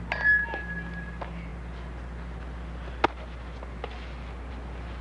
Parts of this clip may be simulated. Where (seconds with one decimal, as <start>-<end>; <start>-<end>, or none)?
none